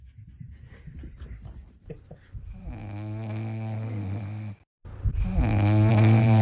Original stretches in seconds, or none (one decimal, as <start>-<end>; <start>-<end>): 2.8-5.9